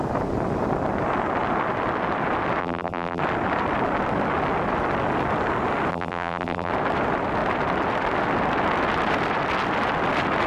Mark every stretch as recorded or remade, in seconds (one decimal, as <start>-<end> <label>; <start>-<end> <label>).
0.0-2.6 recorded; 2.6-3.2 remade; 3.2-5.9 recorded; 5.9-6.7 remade; 6.7-10.5 recorded